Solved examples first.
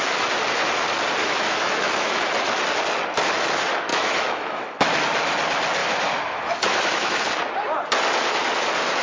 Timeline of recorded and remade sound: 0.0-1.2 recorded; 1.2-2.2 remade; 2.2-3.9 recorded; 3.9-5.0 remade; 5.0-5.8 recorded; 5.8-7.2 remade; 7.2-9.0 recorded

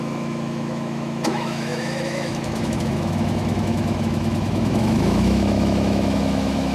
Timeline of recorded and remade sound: 0.0-6.7 remade

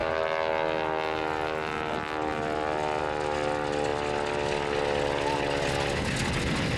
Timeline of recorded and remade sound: 0.0-6.8 recorded

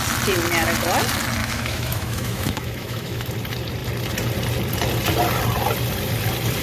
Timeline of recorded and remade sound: 0.0-1.4 recorded; 1.4-3.3 remade; 3.3-6.6 recorded